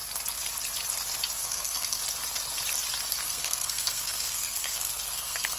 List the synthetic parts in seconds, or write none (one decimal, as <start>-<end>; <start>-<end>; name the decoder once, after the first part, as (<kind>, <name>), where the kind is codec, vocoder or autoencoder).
1.4-2.0 (codec, SNAC); 3.2-5.6